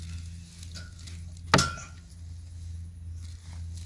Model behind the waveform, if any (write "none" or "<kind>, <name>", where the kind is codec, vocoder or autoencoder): none